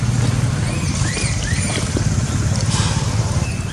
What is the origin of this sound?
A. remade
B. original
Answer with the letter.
B